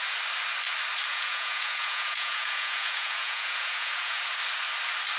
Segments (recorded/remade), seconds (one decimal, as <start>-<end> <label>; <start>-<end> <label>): 0.0-1.1 recorded; 1.1-4.2 remade; 4.2-5.2 recorded